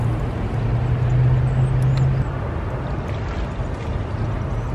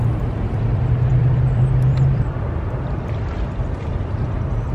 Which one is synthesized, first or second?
second